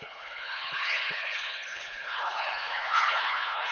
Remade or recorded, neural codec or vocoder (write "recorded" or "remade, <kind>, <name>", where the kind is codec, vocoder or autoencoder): remade, codec, HILCodec